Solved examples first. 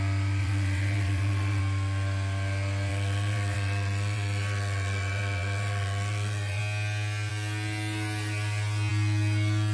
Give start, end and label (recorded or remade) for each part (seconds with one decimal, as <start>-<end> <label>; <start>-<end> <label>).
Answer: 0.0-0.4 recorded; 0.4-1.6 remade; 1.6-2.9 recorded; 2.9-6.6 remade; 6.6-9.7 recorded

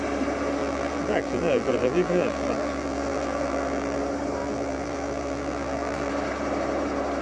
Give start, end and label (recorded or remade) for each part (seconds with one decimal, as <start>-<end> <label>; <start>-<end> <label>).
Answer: 0.0-0.6 recorded; 0.6-4.0 remade; 4.0-4.4 recorded; 4.4-6.1 remade; 6.1-7.2 recorded

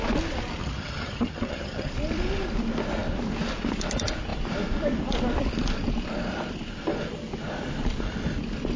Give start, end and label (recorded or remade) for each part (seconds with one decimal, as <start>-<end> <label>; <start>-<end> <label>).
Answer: 0.0-0.6 recorded; 0.6-1.9 remade; 1.9-8.8 recorded